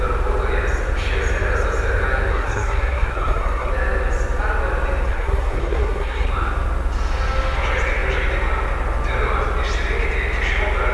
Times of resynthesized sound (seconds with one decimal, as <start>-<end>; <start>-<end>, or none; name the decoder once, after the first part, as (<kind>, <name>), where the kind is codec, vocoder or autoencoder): 2.3-3.7 (codec, SNAC); 5.1-6.3